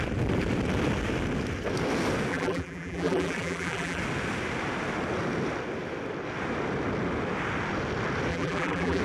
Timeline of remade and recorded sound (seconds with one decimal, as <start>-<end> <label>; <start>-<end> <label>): 0.0-2.3 recorded; 2.3-4.0 remade; 4.0-8.3 recorded; 8.3-9.0 remade